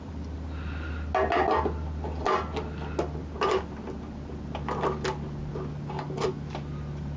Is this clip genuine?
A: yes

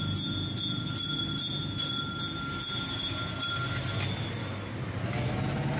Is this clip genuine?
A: yes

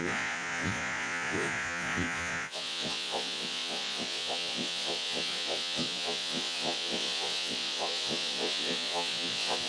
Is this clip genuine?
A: no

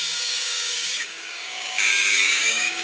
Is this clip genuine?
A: no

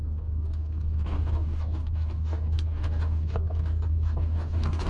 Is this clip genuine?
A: no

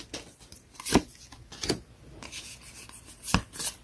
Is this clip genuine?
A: yes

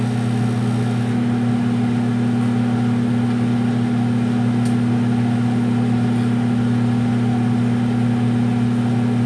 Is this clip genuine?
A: yes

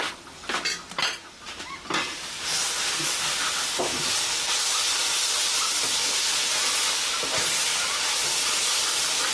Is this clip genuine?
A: yes